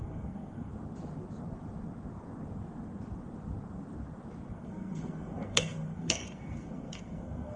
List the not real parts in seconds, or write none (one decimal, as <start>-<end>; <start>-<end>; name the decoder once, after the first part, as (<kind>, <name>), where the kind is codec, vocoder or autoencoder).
0.0-0.7 (codec, SNAC); 4.5-7.6